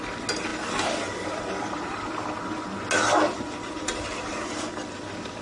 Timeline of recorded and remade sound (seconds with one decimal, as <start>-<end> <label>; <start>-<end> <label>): 0.0-5.4 recorded

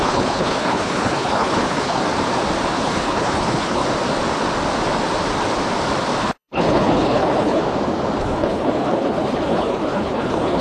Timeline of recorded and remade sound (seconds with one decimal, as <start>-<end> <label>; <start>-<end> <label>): 0.0-2.0 remade; 2.0-2.7 recorded; 2.7-3.8 remade; 3.8-6.2 recorded; 6.2-7.6 remade; 7.6-8.2 recorded; 8.2-10.6 remade

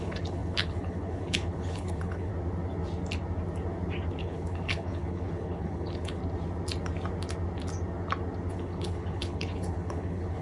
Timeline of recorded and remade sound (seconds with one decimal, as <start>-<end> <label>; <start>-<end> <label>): 0.0-2.3 remade; 2.3-4.2 recorded; 4.2-6.2 remade; 6.2-8.5 recorded; 8.5-10.4 remade

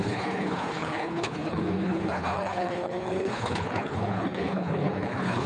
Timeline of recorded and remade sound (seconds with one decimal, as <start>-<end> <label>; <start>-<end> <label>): 0.0-5.5 remade

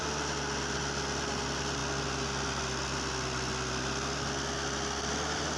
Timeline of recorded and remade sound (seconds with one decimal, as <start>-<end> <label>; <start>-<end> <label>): 0.0-5.6 recorded

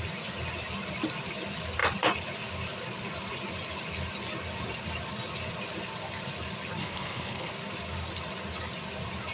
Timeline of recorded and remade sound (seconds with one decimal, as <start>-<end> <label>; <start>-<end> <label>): 0.0-6.8 recorded; 6.8-7.5 remade; 7.5-9.3 recorded

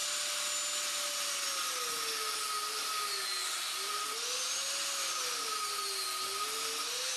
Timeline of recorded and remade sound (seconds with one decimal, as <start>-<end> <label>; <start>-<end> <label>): 0.0-7.2 recorded